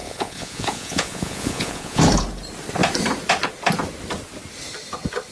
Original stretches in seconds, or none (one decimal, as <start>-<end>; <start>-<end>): 2.0-5.3